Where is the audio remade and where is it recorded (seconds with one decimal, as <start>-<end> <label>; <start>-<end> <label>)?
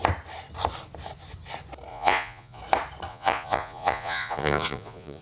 0.0-1.9 recorded; 1.9-2.6 remade; 2.6-3.1 recorded; 3.1-5.2 remade